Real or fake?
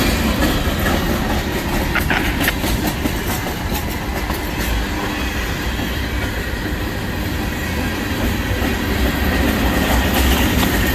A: real